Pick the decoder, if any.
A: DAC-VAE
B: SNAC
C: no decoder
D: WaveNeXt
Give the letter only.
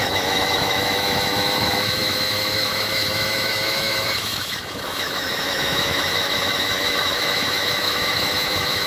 A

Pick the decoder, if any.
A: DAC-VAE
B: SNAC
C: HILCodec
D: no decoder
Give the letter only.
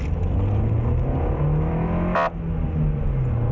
D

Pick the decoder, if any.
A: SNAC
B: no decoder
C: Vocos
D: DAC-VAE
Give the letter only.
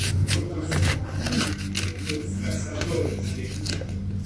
B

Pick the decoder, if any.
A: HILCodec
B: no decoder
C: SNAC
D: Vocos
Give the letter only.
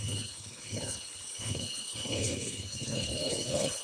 A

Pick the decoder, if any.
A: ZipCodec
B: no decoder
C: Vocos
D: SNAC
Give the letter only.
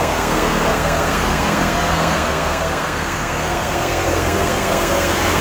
D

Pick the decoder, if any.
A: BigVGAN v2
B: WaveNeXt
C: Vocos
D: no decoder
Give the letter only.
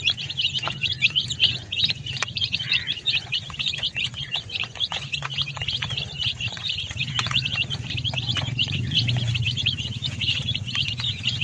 C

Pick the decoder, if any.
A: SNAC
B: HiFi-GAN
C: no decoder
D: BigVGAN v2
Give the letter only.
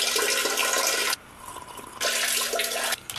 C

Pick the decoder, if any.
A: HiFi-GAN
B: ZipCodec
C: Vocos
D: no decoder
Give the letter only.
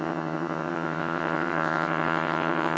A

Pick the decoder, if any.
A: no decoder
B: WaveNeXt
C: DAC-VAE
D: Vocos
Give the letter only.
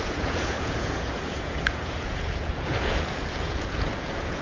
D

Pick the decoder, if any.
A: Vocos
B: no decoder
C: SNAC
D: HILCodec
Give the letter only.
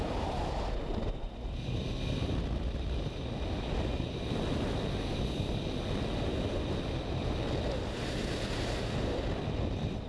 B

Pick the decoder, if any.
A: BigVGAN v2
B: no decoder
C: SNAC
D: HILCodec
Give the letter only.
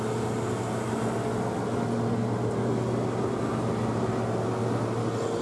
B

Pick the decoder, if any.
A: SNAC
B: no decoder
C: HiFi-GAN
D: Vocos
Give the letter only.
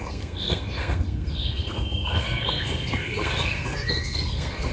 A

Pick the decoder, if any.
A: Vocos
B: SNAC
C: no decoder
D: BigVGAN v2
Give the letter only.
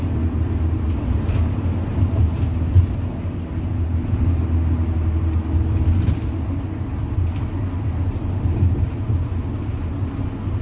C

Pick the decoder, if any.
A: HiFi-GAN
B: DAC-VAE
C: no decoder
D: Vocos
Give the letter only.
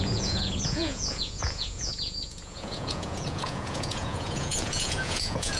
D